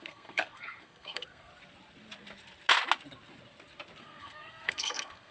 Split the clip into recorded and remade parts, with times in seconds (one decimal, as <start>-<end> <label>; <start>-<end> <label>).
0.0-1.5 remade; 1.5-4.0 recorded; 4.0-5.3 remade